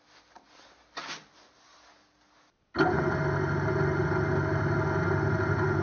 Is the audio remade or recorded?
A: recorded